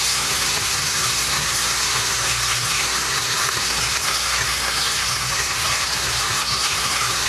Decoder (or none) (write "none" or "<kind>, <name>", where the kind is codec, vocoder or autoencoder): codec, SNAC